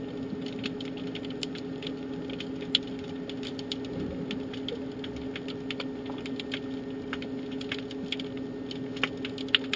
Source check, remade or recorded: recorded